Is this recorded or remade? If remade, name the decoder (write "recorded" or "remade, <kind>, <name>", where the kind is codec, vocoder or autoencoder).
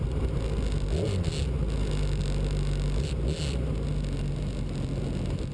recorded